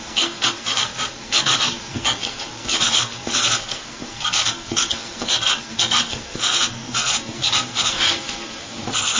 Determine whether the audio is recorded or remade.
remade